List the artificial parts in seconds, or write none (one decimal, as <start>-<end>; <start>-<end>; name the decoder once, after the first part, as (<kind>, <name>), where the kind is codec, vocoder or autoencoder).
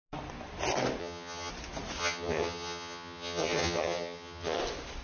1.0-1.5 (vocoder, HiFi-GAN); 2.0-4.6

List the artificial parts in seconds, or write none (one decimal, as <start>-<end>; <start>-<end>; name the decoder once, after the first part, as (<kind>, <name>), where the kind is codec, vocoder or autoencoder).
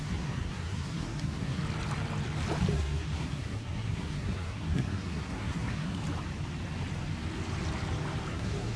0.0-1.6 (codec, SNAC); 2.7-6.0; 8.3-8.8